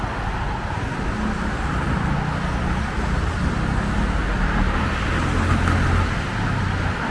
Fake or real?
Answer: real